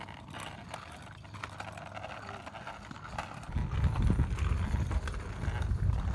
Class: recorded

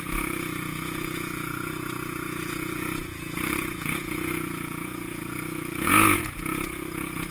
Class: remade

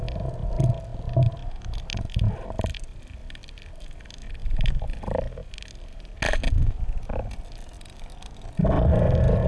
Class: recorded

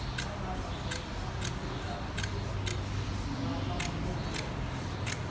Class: recorded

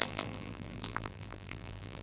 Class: remade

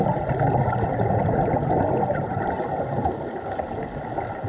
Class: remade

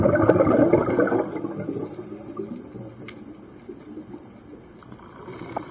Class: recorded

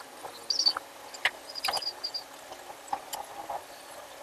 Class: recorded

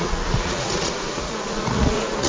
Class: remade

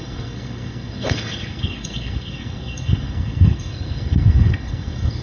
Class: remade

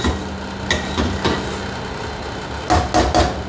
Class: recorded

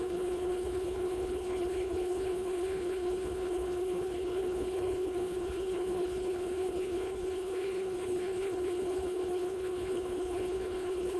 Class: remade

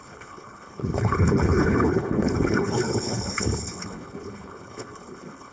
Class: remade